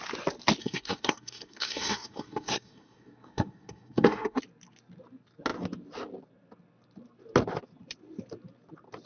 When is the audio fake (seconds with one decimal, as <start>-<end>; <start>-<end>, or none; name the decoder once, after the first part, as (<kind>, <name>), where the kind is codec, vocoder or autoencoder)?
0.6-4.4 (codec, SNAC)